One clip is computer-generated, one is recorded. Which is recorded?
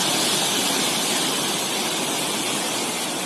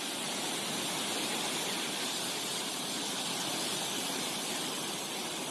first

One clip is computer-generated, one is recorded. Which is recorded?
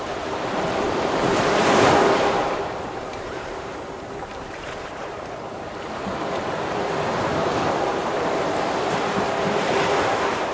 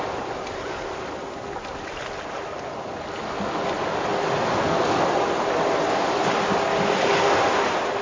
second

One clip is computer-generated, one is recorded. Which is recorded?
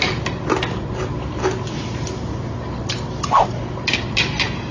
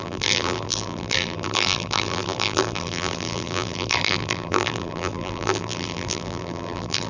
first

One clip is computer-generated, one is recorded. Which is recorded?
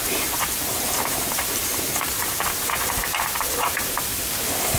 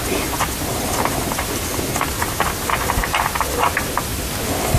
second